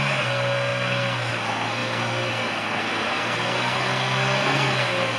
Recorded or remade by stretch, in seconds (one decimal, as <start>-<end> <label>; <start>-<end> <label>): 0.0-5.2 remade